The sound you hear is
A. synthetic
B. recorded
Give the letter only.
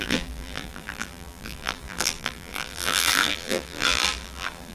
A